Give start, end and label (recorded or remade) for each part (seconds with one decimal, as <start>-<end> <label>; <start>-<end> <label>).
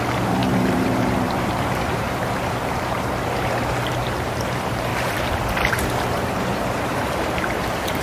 0.0-4.9 remade; 4.9-5.7 recorded; 5.7-8.0 remade